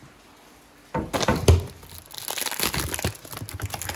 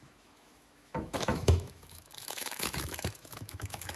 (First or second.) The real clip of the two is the first